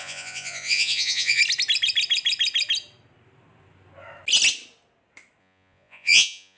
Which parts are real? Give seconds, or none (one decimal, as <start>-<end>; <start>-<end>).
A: 1.4-5.4